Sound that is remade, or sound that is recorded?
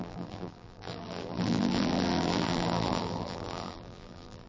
remade